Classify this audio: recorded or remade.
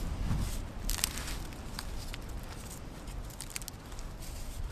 recorded